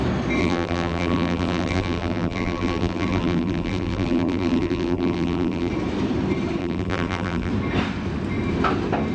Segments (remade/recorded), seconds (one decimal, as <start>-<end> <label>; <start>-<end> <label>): 0.0-0.4 recorded; 0.4-5.7 remade; 5.7-6.6 recorded; 6.6-7.5 remade; 7.5-9.1 recorded